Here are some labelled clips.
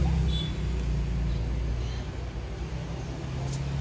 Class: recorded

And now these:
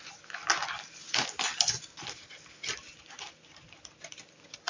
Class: recorded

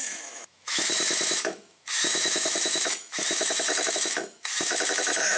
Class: remade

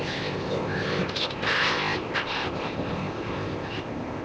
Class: remade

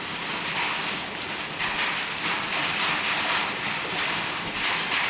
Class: recorded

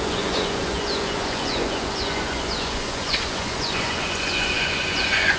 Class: remade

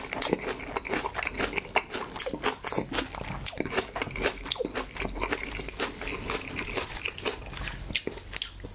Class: recorded